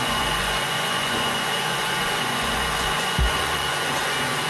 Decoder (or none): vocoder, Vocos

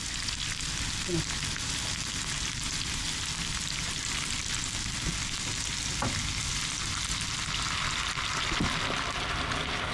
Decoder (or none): none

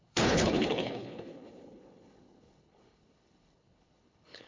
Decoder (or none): codec, HILCodec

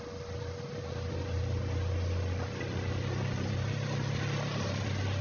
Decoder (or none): none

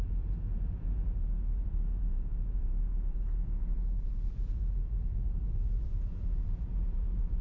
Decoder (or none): vocoder, Vocos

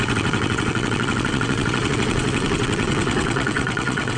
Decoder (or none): vocoder, WaveNeXt